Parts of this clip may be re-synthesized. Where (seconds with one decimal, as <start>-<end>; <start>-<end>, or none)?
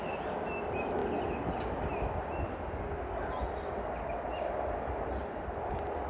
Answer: none